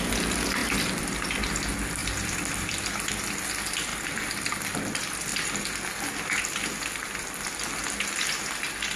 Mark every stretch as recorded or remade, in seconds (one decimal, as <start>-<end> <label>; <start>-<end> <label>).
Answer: 0.0-0.6 recorded; 0.6-1.4 remade; 1.4-2.0 recorded; 2.0-3.1 remade; 3.1-3.9 recorded; 3.9-4.7 remade; 4.7-9.0 recorded